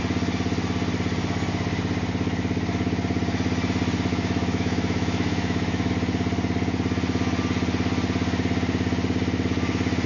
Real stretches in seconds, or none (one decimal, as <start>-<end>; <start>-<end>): 0.0-4.1; 5.9-10.1